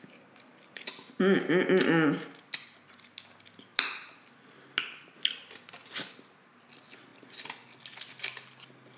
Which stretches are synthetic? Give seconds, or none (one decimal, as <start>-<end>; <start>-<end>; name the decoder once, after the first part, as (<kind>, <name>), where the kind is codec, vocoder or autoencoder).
none